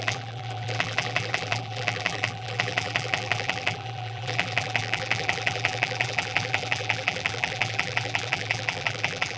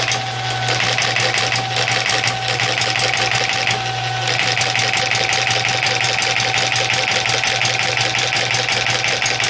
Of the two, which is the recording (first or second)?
second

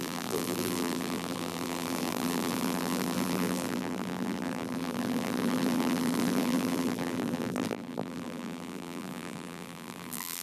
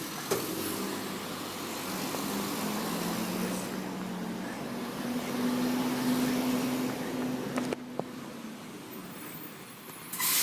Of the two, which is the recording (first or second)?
second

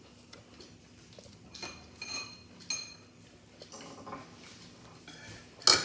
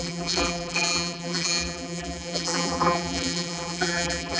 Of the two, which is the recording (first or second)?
first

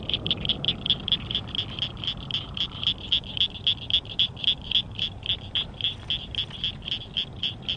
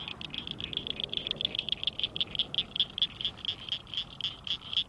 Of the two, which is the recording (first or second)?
second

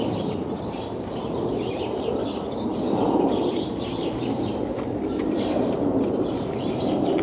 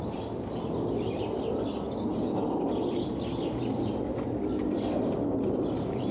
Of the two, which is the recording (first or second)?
second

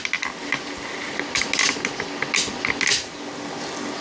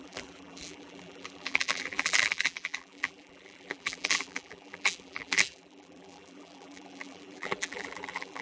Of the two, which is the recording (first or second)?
first